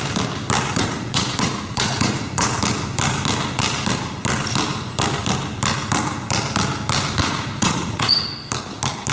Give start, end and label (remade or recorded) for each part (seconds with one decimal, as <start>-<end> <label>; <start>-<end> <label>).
0.0-0.7 recorded; 0.7-2.6 remade; 2.6-7.2 recorded; 7.2-8.3 remade; 8.3-9.1 recorded